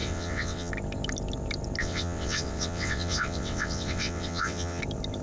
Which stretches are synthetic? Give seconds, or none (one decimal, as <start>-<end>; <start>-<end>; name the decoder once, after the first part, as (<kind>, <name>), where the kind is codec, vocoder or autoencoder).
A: 0.0-0.7 (vocoder, WaveNeXt); 1.8-4.8